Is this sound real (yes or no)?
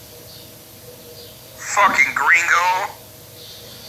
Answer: yes